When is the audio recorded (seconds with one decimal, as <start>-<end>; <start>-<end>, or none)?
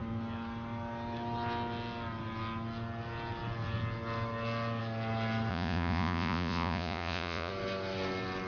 0.0-5.5; 7.5-8.5